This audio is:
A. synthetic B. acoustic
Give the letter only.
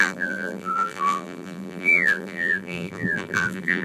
A